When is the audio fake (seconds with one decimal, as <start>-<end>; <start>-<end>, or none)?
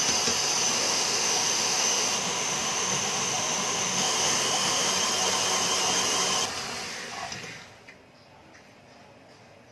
0.7-4.9